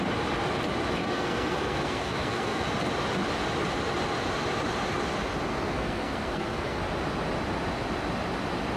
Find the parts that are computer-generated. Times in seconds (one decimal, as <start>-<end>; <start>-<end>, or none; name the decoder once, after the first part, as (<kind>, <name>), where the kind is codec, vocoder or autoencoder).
1.0-2.6 (codec, SNAC); 5.5-6.8